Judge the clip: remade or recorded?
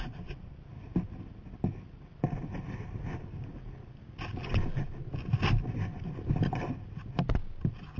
recorded